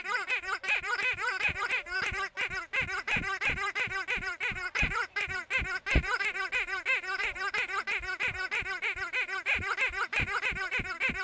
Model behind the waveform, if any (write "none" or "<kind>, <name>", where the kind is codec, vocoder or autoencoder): vocoder, BigVGAN v2